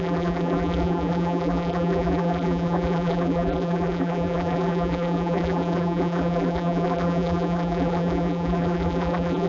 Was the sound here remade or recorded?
remade